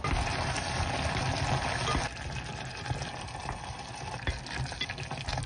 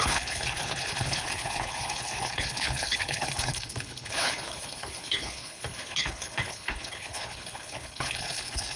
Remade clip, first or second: second